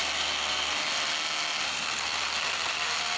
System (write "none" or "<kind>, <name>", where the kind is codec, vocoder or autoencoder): none